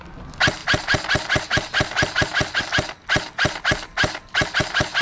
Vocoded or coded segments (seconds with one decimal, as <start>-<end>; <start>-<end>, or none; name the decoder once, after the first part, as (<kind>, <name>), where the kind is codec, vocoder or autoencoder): none